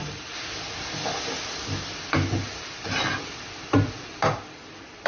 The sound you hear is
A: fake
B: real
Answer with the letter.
B